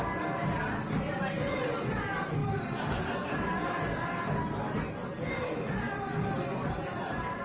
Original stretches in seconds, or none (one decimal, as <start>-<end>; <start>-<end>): 0.0-7.4